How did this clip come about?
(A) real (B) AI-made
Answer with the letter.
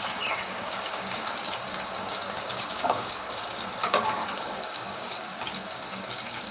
B